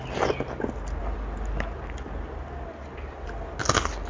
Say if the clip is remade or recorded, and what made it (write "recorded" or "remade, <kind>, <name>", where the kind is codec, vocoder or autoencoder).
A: recorded